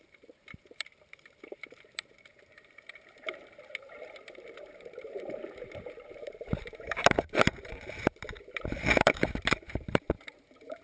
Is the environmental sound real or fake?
fake